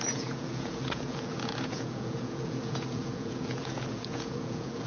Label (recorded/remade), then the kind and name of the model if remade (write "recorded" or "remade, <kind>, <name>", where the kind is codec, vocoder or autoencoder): remade, vocoder, Vocos